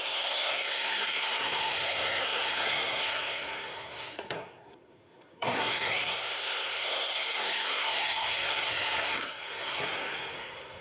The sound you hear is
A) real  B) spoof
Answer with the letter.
B